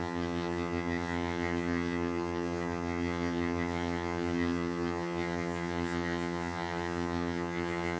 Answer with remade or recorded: remade